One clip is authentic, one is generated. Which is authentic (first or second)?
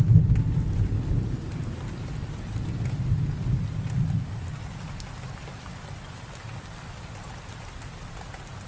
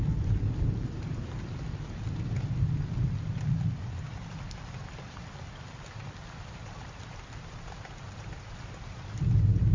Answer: first